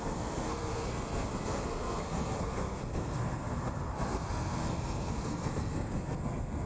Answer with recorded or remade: remade